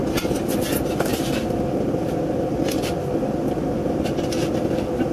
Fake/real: real